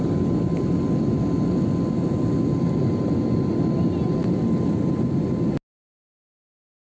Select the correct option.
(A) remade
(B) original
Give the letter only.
B